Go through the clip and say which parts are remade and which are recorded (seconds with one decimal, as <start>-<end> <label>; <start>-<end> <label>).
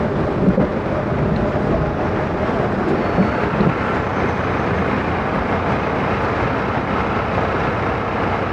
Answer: 0.0-8.5 recorded